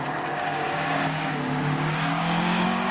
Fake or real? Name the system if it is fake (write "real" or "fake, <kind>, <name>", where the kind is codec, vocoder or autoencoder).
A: fake, codec, DAC